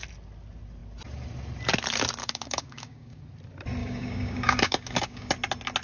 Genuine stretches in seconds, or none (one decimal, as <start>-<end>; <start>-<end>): 0.0-2.2; 3.2-3.8; 5.3-5.8